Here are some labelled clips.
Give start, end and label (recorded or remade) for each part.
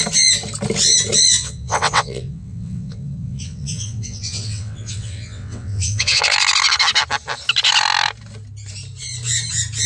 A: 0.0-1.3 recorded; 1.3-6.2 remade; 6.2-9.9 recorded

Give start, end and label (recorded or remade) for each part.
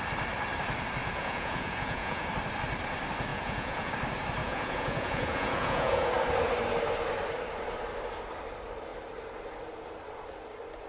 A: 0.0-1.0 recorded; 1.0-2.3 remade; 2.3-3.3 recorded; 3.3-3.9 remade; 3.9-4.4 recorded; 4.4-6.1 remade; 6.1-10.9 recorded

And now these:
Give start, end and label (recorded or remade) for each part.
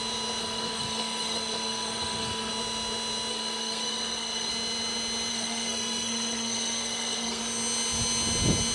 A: 0.0-0.4 recorded; 0.4-2.5 remade; 2.5-3.3 recorded; 3.3-4.5 remade; 4.5-5.3 recorded; 5.3-7.4 remade; 7.4-8.7 recorded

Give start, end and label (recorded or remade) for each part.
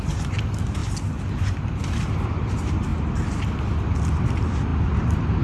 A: 0.0-5.4 recorded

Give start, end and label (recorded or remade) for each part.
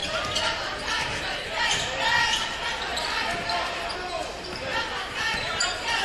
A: 0.0-6.0 recorded